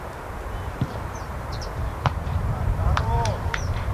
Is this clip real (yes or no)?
no